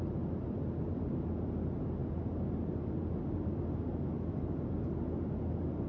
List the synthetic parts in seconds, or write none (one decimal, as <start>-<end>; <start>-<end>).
none